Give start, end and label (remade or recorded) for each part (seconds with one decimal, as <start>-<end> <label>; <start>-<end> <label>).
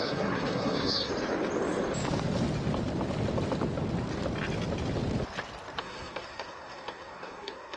0.0-1.1 remade; 1.1-5.8 recorded; 5.8-7.8 remade